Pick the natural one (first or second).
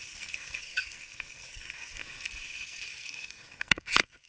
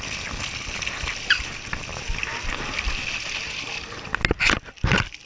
second